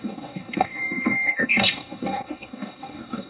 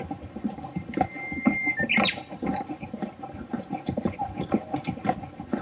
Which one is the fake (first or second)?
first